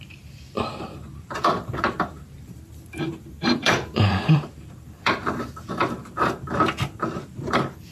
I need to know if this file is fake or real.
fake